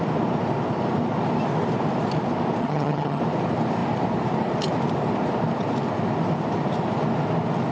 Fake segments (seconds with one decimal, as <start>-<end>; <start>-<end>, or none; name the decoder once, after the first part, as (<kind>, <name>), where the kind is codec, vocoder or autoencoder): 2.6-3.2 (vocoder, HiFi-GAN)